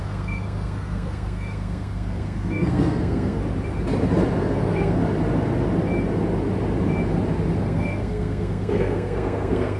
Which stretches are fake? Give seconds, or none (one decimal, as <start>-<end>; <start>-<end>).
0.0-3.4; 4.4-5.0; 7.6-9.8